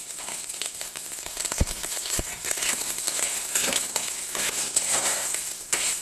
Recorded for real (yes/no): no